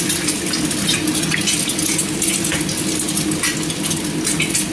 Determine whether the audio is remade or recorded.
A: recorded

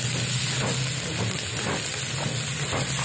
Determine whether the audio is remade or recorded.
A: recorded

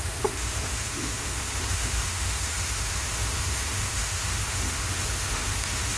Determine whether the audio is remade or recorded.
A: remade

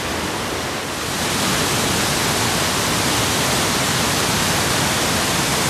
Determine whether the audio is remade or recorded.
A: recorded